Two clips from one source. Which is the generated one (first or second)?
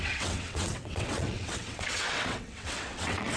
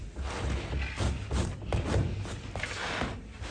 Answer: first